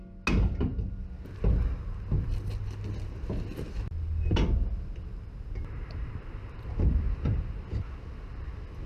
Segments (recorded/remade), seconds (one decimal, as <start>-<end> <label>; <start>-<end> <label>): 0.0-8.9 recorded